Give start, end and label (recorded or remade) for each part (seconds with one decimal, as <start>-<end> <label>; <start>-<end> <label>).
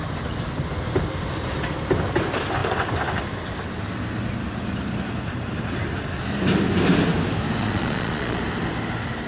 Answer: 0.0-7.6 recorded; 7.6-8.4 remade; 8.4-9.3 recorded